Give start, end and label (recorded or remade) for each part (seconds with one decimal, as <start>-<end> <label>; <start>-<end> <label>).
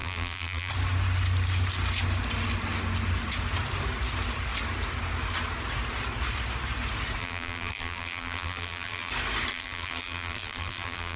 0.0-0.7 remade; 0.7-7.2 recorded; 7.2-9.1 remade; 9.1-9.5 recorded; 9.5-11.2 remade